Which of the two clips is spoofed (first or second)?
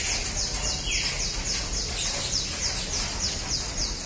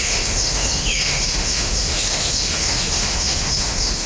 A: second